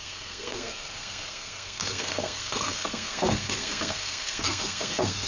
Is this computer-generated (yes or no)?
yes